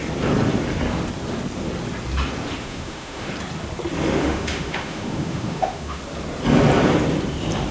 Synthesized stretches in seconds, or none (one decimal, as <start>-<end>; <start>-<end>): 2.6-3.3; 4.2-6.0